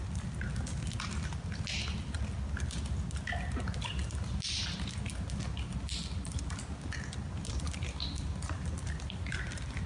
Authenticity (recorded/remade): recorded